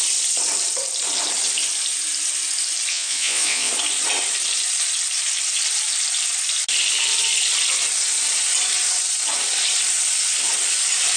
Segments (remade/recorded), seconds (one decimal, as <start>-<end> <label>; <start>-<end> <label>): 0.0-2.9 recorded; 2.9-3.7 remade; 3.7-11.2 recorded